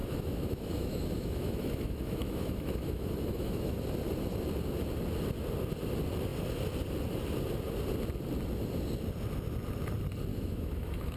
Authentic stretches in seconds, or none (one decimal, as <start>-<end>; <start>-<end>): 3.8-10.3